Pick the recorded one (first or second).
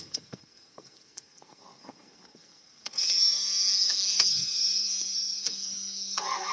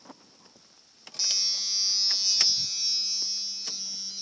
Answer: second